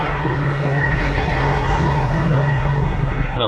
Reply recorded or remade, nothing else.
remade